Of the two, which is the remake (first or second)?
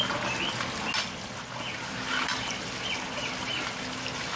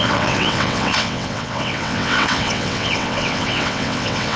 second